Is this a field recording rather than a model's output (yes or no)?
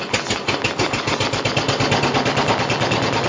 yes